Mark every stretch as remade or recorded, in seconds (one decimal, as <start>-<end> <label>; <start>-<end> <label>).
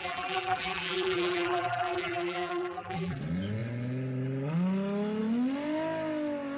0.0-3.2 remade; 3.2-6.6 recorded